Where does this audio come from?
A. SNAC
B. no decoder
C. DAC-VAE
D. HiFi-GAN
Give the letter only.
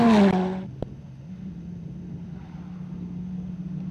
B